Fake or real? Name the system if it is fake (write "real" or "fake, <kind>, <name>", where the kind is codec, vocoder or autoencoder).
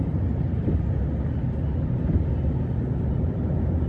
real